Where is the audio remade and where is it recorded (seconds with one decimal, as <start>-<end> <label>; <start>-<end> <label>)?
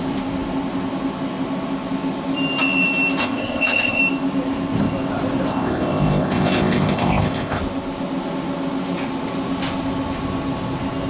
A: 0.0-3.2 recorded; 3.2-4.0 remade; 4.0-5.5 recorded; 5.5-7.6 remade; 7.6-11.1 recorded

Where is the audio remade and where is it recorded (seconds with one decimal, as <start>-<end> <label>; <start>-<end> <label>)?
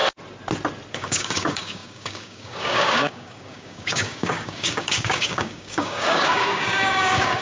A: 0.0-0.9 recorded; 0.9-7.4 remade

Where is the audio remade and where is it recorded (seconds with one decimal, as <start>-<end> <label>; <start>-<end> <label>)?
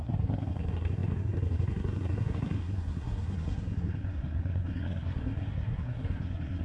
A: 0.0-6.6 remade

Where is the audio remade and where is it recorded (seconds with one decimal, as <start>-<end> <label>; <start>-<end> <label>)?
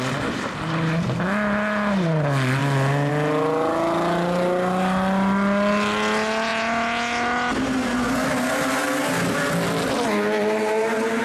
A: 0.0-11.2 recorded